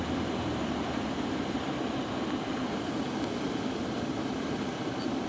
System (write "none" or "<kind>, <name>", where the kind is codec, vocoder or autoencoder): vocoder, BigVGAN v2